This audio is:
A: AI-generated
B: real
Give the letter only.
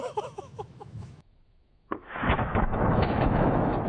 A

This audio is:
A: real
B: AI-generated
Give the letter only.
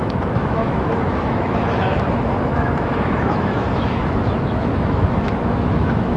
B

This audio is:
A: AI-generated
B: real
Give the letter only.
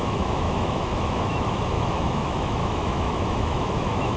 A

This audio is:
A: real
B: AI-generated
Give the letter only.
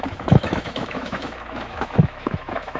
B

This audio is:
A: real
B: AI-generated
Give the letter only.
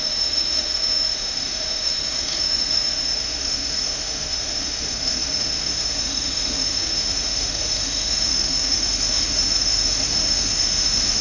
B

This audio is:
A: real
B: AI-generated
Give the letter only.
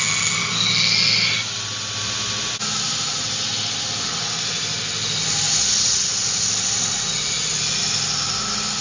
A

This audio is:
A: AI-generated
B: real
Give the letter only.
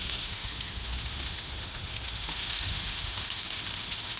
A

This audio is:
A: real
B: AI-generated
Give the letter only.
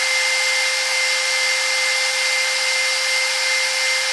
A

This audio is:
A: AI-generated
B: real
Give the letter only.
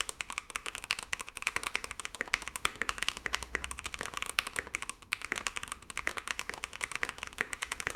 A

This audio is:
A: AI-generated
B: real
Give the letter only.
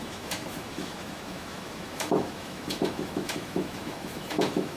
A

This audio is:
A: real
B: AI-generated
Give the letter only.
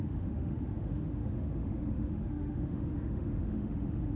B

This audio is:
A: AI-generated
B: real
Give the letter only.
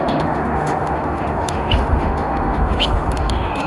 A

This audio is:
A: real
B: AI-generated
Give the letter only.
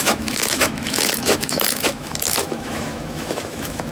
B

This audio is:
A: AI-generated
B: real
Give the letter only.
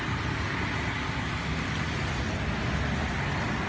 B